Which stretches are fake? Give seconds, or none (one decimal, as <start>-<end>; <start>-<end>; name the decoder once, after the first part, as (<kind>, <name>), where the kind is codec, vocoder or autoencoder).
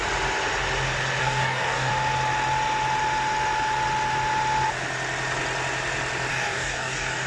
1.2-1.9 (codec, DAC); 6.3-7.3